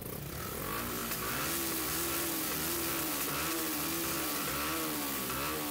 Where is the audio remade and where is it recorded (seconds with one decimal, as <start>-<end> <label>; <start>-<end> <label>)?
0.0-5.7 recorded